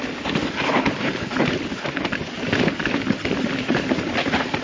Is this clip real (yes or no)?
no